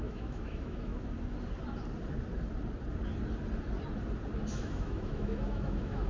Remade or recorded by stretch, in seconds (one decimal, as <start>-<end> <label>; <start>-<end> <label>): 0.0-0.9 remade; 0.9-4.6 recorded; 4.6-6.1 remade